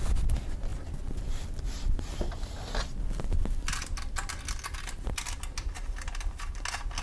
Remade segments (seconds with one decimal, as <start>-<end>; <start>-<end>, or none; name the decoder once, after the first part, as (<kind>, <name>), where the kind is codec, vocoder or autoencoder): none